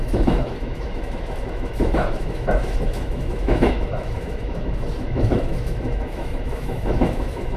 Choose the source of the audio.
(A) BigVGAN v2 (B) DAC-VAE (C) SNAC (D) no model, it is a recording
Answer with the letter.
B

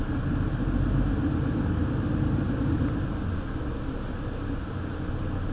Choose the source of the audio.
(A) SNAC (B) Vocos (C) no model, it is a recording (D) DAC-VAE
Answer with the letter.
C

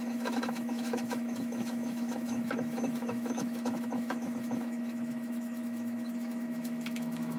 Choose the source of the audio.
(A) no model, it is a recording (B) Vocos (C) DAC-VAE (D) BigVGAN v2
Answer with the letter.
C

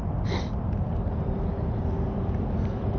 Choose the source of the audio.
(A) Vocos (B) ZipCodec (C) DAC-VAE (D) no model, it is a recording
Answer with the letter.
D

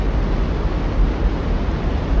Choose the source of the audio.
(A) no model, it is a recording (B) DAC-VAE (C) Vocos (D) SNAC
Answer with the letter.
A